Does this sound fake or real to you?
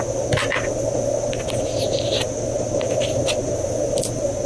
real